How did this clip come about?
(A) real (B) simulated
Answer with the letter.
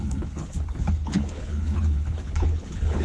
B